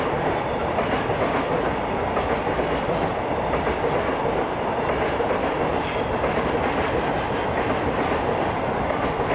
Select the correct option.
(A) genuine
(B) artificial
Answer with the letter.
A